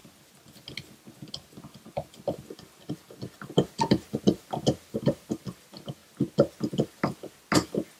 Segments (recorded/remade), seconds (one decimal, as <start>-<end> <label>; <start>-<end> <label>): 0.0-8.0 recorded